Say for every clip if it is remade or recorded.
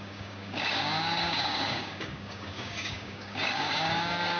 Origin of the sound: remade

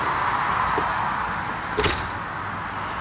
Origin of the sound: recorded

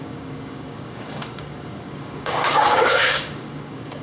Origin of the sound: remade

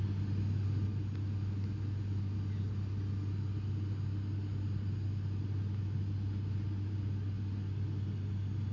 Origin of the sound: recorded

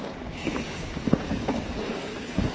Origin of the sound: remade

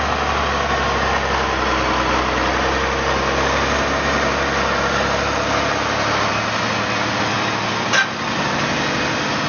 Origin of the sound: recorded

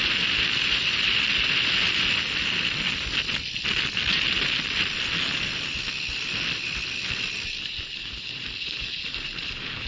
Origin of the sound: recorded